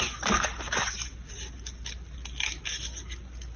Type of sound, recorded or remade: recorded